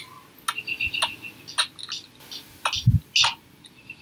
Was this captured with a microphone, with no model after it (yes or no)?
yes